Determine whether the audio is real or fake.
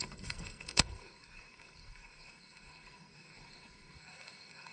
fake